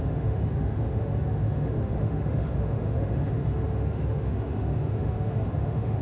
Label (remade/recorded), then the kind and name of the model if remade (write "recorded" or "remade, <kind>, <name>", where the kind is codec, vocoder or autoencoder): remade, autoencoder, DAC-VAE